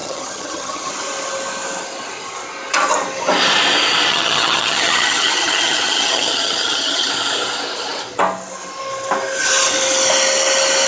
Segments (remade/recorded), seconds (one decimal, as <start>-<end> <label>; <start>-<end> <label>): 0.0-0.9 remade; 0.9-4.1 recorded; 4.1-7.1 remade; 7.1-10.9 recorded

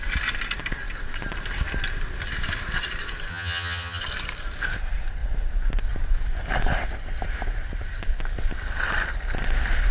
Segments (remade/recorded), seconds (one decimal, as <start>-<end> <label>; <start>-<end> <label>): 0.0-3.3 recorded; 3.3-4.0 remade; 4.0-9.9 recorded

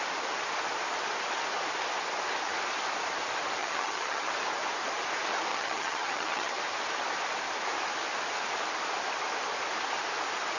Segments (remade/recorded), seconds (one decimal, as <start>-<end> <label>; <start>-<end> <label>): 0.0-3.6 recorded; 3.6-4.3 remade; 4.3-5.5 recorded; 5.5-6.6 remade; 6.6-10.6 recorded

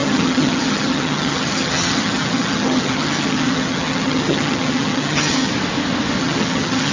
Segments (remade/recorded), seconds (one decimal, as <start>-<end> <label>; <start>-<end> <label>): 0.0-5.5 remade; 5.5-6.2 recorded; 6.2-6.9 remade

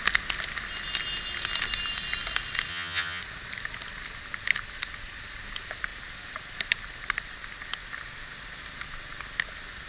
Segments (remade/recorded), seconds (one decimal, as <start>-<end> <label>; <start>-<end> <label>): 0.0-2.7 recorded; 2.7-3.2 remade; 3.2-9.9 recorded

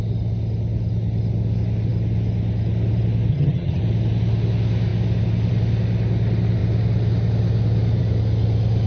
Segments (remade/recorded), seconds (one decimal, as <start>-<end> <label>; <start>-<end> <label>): 0.0-3.3 recorded; 3.3-3.8 remade; 3.8-8.9 recorded

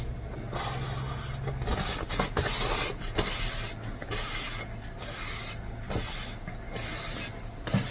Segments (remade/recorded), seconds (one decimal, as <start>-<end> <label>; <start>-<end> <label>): 0.0-7.9 recorded